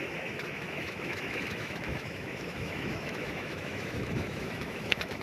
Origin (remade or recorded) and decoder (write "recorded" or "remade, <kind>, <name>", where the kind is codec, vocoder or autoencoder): remade, autoencoder, DAC-VAE